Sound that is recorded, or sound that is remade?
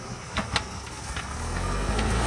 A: remade